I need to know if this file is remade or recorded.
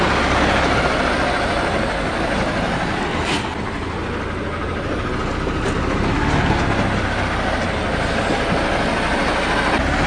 recorded